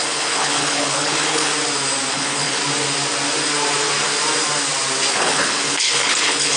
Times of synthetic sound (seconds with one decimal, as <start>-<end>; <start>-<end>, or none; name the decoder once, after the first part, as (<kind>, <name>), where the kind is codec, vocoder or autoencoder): 0.0-1.5 (codec, HILCodec); 2.1-2.6; 5.1-6.6